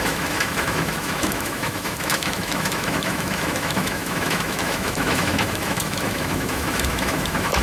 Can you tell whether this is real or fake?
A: fake